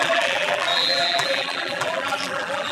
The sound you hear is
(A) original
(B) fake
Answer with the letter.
B